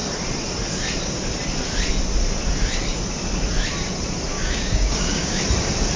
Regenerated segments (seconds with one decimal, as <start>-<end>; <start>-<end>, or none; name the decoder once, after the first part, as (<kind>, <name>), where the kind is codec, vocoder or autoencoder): 4.3-5.4 (codec, DAC)